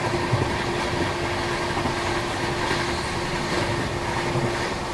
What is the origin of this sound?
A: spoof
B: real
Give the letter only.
B